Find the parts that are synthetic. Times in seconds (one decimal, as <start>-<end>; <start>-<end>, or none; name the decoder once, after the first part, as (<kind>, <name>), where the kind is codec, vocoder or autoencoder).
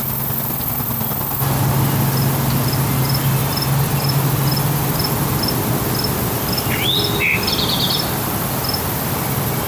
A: none